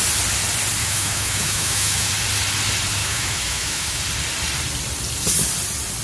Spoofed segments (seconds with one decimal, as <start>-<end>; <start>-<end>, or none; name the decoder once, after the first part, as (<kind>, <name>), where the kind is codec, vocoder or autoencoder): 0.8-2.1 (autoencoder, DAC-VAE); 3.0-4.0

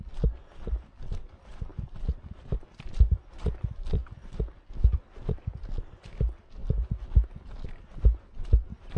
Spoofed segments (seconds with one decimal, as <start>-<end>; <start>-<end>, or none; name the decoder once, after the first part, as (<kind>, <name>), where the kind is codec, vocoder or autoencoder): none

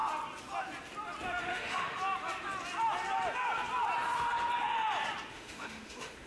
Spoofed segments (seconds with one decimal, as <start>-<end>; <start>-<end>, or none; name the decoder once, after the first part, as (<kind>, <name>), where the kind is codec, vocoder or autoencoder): 1.4-2.0 (autoencoder, DAC-VAE); 5.3-6.3

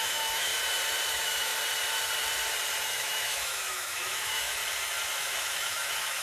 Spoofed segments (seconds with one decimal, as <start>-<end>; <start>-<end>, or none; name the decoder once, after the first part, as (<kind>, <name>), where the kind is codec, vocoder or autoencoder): 0.0-0.5 (autoencoder, DAC-VAE); 1.1-1.5; 2.8-4.6; 5.2-6.2

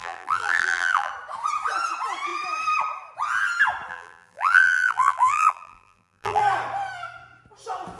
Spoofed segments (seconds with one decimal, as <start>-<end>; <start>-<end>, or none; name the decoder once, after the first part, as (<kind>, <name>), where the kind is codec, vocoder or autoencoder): 0.0-1.1 (vocoder, BigVGAN v2); 3.9-6.4

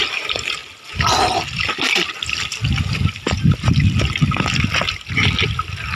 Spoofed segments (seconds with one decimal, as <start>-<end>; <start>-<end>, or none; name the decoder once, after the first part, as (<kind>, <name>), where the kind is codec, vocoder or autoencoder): none

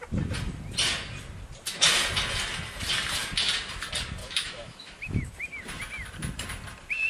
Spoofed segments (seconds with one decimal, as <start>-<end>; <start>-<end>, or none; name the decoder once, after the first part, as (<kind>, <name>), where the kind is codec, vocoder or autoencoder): 4.2-5.3 (autoencoder, DAC-VAE)

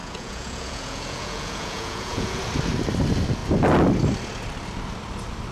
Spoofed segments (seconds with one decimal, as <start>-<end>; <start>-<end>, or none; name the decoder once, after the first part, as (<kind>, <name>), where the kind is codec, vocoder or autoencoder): 0.0-2.4 (vocoder, Vocos)